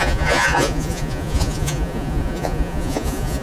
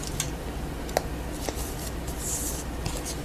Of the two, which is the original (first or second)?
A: second